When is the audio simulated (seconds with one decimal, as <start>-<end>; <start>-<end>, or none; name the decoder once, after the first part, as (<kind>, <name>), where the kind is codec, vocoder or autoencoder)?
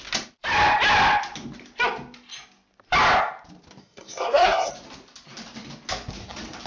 3.8-4.7 (codec, SNAC)